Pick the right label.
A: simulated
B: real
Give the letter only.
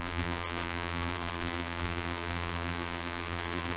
A